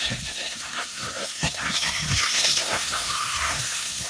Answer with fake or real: fake